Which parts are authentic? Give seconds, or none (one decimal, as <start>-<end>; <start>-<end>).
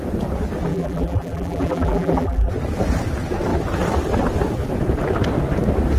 0.0-0.7; 2.5-6.0